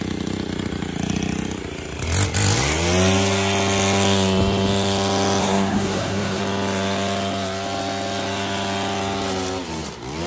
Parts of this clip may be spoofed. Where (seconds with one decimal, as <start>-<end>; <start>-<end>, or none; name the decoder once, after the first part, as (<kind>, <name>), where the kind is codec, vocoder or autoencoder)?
5.4-6.4 (codec, SNAC)